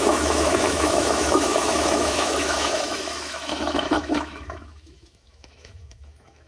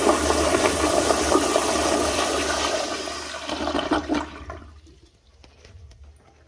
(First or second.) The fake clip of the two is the first